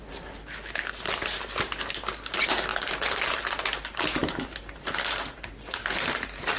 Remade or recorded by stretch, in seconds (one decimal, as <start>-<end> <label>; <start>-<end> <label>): 0.0-2.7 recorded; 2.7-3.4 remade; 3.4-6.6 recorded